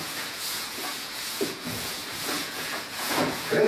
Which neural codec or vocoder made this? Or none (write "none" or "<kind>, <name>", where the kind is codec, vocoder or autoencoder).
vocoder, Vocos